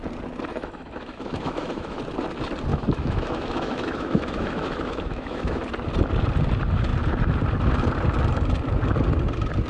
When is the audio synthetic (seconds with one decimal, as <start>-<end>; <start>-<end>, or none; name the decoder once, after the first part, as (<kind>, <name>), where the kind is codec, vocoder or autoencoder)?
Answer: 0.5-2.0 (autoencoder, DAC-VAE); 2.7-5.6